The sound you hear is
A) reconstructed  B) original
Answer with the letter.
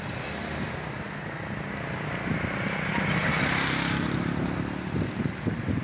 B